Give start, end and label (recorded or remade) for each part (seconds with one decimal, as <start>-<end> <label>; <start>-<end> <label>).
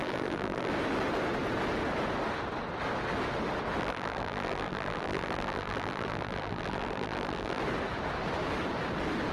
0.0-0.7 remade; 0.7-3.8 recorded; 3.8-7.6 remade; 7.6-9.3 recorded